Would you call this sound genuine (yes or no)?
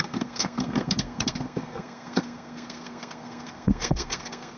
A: no